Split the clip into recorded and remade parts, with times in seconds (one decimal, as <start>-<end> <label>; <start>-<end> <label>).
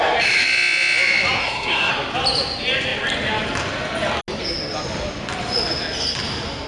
0.0-1.4 recorded; 1.4-1.9 remade; 1.9-6.7 recorded